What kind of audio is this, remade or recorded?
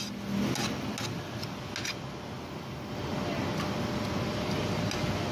recorded